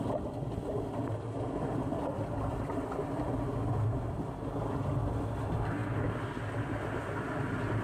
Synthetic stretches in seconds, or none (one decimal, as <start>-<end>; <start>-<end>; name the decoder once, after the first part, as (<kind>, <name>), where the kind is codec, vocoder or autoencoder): none